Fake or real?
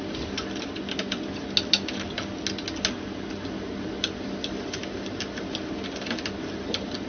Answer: real